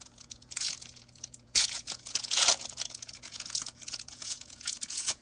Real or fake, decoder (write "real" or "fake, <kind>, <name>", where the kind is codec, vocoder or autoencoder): fake, vocoder, Vocos